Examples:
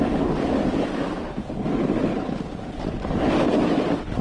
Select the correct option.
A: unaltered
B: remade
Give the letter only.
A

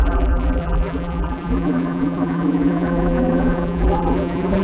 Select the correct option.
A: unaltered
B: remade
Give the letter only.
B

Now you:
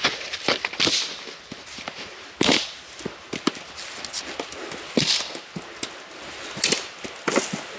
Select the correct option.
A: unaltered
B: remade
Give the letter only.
A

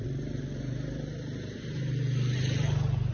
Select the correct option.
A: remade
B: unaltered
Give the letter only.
B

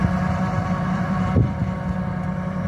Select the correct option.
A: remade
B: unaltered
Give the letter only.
A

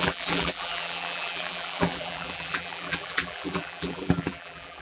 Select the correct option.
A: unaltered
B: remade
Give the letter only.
B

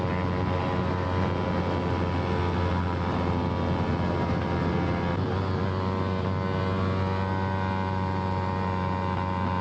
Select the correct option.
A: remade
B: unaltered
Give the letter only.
B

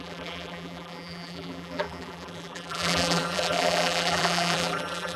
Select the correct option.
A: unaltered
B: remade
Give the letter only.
B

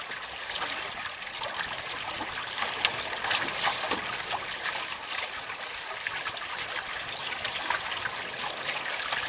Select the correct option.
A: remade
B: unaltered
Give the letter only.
B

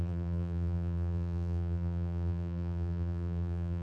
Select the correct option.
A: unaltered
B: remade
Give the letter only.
B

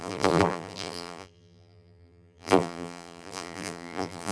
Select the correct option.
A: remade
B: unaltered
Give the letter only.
A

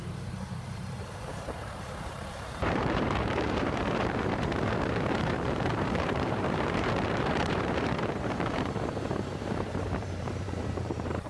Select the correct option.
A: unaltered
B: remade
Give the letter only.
B